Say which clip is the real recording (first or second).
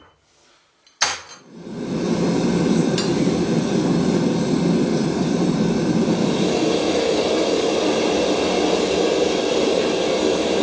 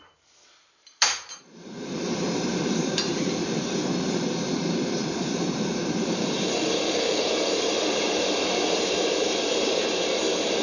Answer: first